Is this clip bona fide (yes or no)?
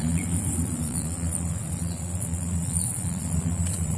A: no